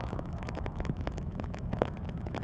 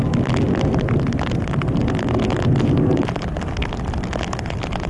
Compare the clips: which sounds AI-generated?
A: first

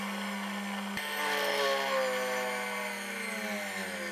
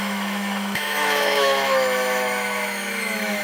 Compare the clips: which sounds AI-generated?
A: second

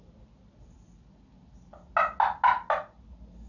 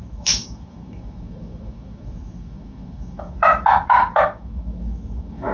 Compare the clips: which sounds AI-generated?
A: second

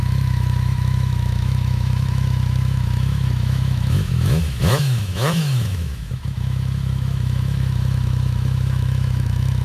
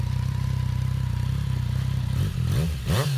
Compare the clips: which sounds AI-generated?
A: first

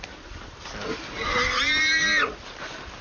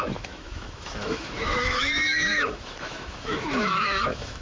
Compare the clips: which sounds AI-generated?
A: second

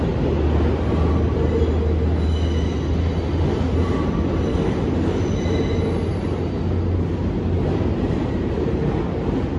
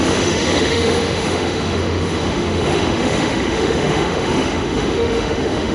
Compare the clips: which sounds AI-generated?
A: second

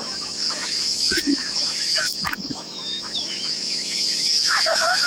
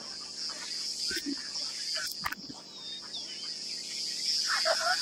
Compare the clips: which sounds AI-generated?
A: first